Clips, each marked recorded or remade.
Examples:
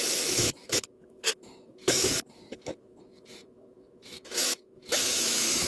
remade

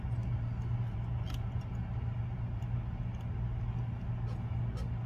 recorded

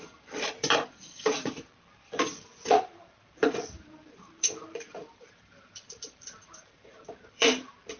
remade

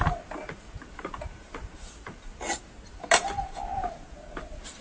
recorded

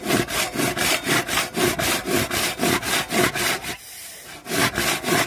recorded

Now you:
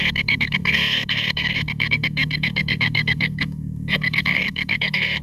remade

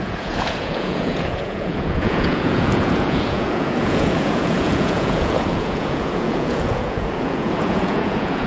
remade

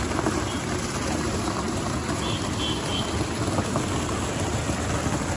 recorded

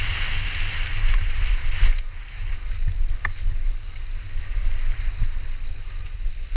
recorded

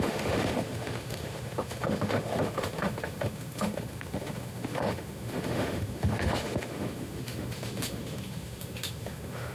remade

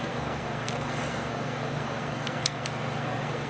remade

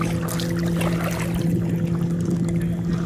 recorded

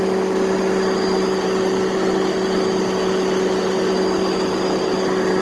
recorded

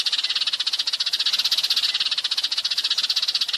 recorded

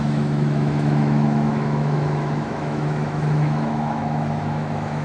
remade